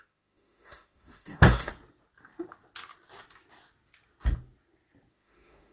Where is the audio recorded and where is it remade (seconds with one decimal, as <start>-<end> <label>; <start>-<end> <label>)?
0.0-1.7 remade; 1.7-5.1 recorded; 5.1-5.7 remade